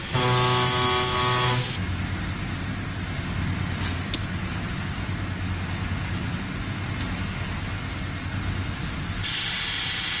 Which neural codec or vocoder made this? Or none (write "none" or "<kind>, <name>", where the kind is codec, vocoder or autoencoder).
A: none